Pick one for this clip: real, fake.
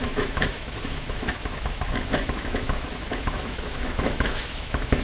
fake